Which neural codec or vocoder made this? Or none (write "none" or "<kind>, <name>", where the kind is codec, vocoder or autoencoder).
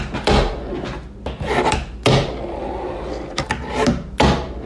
none